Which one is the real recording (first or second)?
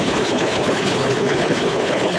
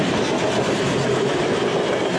second